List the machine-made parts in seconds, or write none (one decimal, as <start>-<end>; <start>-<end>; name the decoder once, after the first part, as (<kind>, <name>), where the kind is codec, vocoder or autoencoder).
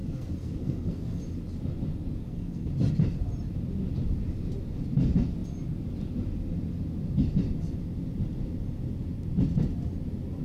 0.0-1.2 (codec, SNAC); 2.2-2.7